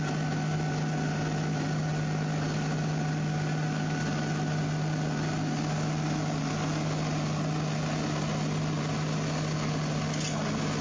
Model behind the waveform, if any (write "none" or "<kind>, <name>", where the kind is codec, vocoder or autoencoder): none